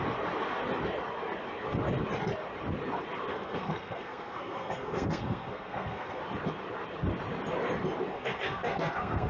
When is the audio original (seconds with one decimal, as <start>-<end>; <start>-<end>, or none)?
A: 0.0-3.3; 6.2-8.1